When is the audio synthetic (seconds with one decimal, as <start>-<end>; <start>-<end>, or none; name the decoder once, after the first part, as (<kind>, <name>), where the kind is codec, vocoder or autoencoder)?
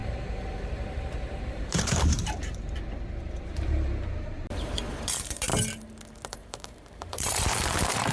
0.0-5.5 (vocoder, BigVGAN v2); 6.3-8.1